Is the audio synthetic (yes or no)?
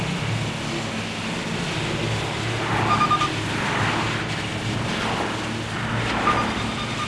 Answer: no